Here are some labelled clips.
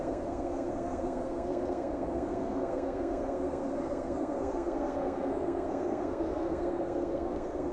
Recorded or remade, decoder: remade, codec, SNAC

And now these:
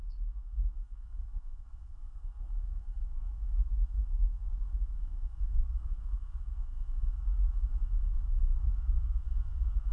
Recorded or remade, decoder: remade, codec, SNAC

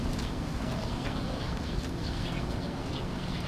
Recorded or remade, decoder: remade, codec, SNAC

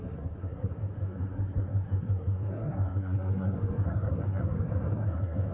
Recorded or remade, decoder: remade, codec, SNAC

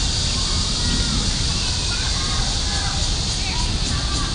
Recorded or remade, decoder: recorded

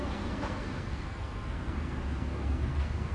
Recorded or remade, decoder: remade, codec, SNAC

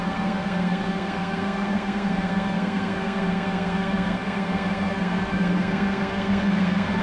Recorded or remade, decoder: remade, codec, SNAC